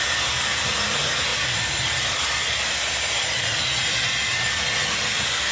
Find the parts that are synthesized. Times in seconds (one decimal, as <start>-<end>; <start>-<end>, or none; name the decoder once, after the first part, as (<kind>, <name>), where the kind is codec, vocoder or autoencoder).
none